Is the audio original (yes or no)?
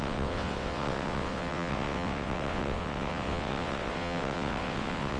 no